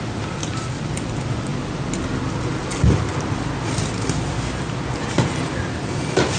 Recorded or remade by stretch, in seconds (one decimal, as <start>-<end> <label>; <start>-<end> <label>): 0.0-6.4 recorded